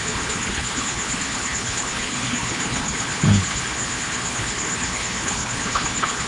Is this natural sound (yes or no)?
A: no